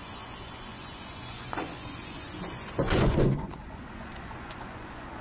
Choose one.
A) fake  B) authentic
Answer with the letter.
A